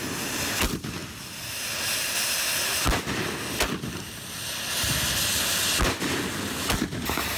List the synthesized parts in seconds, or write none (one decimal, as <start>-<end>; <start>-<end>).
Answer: none